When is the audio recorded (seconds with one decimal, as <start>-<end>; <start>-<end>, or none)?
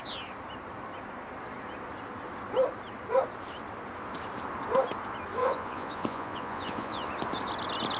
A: 0.0-5.4; 7.1-8.0